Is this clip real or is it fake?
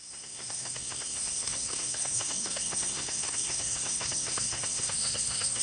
fake